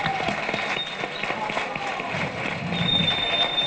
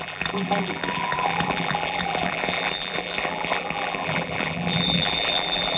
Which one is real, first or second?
first